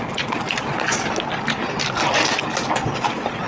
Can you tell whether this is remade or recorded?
recorded